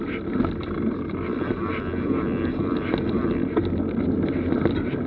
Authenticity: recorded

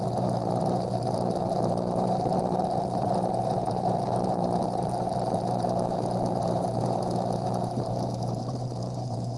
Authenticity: remade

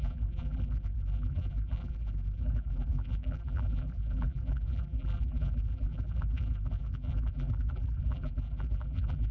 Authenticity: remade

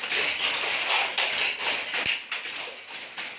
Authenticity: recorded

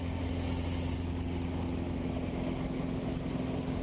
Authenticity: recorded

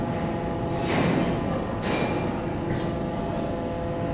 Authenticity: recorded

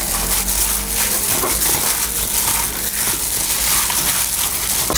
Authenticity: recorded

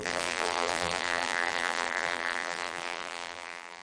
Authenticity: remade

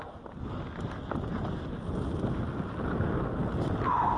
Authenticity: recorded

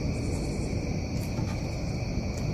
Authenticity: recorded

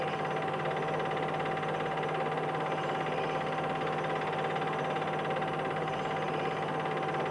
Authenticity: recorded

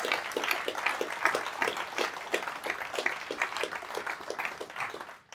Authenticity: recorded